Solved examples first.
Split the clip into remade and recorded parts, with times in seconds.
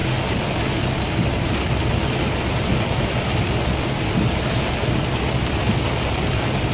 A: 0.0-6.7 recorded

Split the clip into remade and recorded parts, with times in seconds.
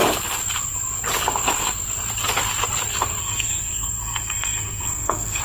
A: 0.0-3.2 recorded; 3.2-5.4 remade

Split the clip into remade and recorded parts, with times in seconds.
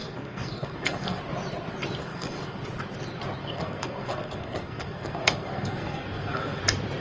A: 0.0-1.2 remade; 1.2-2.0 recorded; 2.0-2.6 remade; 2.6-3.4 recorded; 3.4-6.6 remade; 6.6-7.0 recorded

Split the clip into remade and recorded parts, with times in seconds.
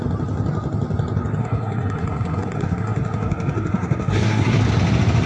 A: 0.0-1.4 recorded; 1.4-4.6 remade; 4.6-5.3 recorded